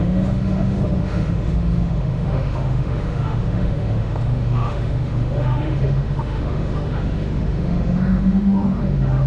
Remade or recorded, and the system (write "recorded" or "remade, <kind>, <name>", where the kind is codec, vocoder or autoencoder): remade, autoencoder, DAC-VAE